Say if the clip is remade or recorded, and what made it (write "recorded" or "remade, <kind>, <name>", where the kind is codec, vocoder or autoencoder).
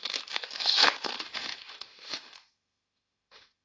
remade, autoencoder, DAC-VAE